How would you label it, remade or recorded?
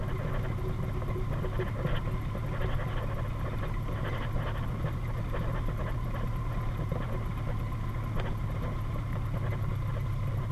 recorded